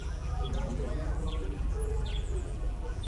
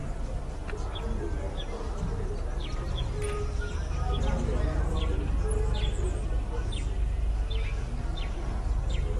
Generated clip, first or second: first